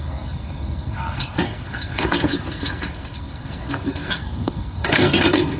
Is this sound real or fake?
fake